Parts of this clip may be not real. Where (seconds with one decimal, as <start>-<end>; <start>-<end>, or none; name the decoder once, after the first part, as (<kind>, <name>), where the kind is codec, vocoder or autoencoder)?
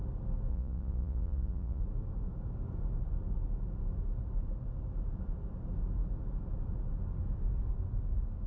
0.5-1.8 (vocoder, Vocos)